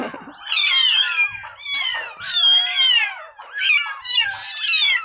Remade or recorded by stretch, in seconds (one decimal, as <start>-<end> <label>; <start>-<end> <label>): 0.0-5.0 recorded